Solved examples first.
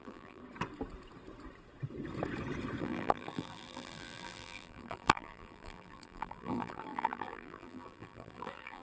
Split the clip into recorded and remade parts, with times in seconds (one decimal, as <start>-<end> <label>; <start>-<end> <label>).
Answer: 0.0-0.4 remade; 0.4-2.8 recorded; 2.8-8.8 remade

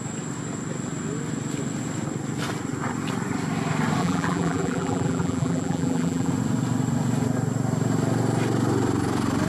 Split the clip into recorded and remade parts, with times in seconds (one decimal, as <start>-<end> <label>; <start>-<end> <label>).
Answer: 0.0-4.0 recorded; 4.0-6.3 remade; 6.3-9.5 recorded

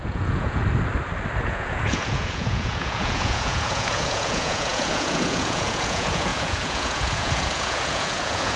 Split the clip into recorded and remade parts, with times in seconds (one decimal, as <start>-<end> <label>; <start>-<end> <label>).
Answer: 0.0-0.6 remade; 0.6-1.4 recorded; 1.4-8.6 remade

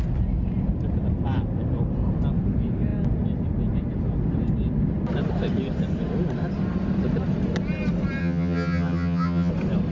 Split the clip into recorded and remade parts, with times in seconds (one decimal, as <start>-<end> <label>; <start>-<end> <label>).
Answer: 0.0-8.2 recorded; 8.2-9.5 remade; 9.5-9.9 recorded

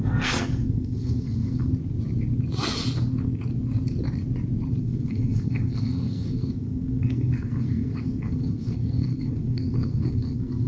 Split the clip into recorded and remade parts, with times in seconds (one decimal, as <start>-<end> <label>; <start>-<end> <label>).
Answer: 0.0-1.7 remade; 1.7-4.8 recorded; 4.8-10.7 remade

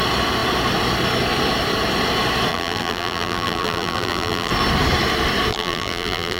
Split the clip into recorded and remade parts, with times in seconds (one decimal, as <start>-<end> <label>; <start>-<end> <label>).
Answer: 0.0-2.5 recorded; 2.5-4.5 remade; 4.5-5.5 recorded; 5.5-6.4 remade